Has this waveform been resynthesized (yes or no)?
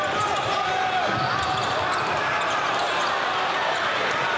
no